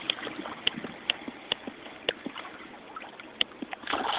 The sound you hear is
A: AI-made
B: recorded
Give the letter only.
B